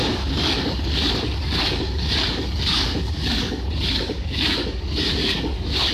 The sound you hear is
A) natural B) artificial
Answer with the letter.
B